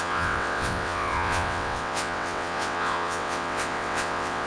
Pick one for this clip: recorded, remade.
remade